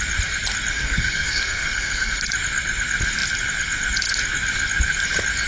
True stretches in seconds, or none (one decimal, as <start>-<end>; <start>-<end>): 0.0-0.7; 2.2-5.5